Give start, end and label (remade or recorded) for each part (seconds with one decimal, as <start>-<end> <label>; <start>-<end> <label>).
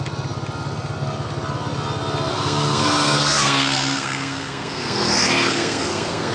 0.0-2.3 recorded; 2.3-6.3 remade